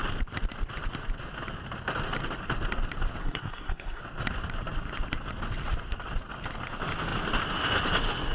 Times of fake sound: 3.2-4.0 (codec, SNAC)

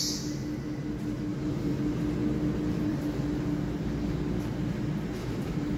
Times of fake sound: 1.3-1.8 (vocoder, BigVGAN v2); 2.9-3.4; 5.2-5.8

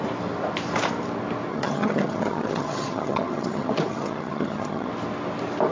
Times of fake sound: 1.5-4.9 (vocoder, HiFi-GAN)

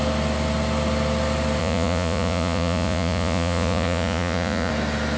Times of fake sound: 1.6-4.7 (vocoder, Vocos)

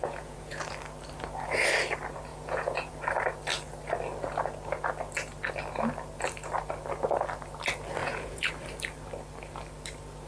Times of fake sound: 0.0-0.6 (vocoder, Vocos); 2.3-2.9; 8.0-8.5

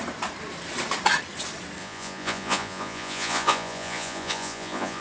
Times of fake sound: 1.8-5.0 (vocoder, Vocos)

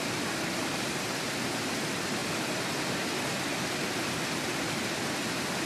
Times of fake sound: none

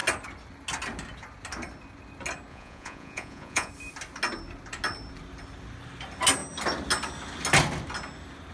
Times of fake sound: 2.5-3.7 (vocoder, Vocos)